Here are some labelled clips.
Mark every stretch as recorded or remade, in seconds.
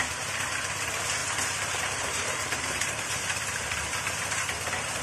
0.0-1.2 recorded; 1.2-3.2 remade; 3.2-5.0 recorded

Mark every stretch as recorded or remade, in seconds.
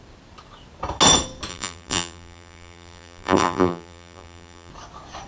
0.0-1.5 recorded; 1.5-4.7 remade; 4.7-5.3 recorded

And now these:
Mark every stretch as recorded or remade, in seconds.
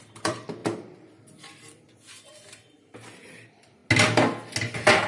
0.0-0.6 remade; 0.6-2.8 recorded; 2.8-3.8 remade; 3.8-4.6 recorded; 4.6-5.1 remade